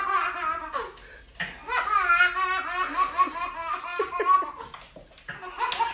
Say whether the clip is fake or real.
real